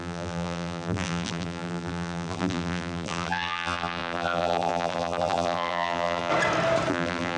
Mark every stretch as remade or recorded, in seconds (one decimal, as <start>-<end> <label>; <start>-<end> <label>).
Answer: 0.0-6.3 remade; 6.3-6.9 recorded; 6.9-7.4 remade

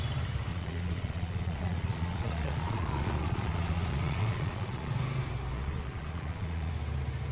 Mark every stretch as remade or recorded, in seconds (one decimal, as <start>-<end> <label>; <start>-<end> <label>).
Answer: 0.0-0.5 recorded; 0.5-4.9 remade; 4.9-5.5 recorded; 5.5-6.7 remade; 6.7-7.3 recorded

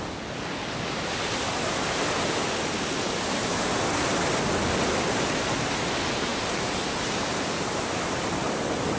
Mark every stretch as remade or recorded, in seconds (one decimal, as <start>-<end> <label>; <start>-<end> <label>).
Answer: 0.0-6.3 recorded; 6.3-8.1 remade; 8.1-9.0 recorded

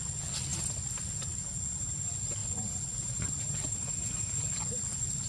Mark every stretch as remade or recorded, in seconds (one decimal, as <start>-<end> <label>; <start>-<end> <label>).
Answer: 0.0-0.5 recorded; 0.5-1.1 remade; 1.1-2.4 recorded; 2.4-4.3 remade; 4.3-5.3 recorded

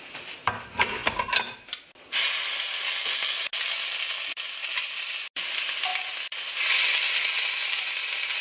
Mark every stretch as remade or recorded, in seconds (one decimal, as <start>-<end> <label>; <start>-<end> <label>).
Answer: 0.0-8.4 recorded

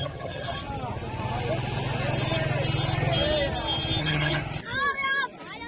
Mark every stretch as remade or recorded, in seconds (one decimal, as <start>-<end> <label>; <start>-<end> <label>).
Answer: 0.0-0.6 remade; 0.6-4.0 recorded; 4.0-4.4 remade; 4.4-5.7 recorded

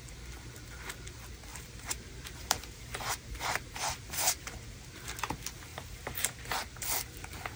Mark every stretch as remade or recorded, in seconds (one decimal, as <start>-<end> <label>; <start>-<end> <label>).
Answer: 0.0-1.5 recorded; 1.5-4.9 remade; 4.9-5.7 recorded; 5.7-6.4 remade; 6.4-7.6 recorded

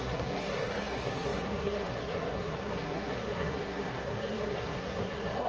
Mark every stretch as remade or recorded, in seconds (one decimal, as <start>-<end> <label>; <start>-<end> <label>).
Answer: 0.0-5.5 remade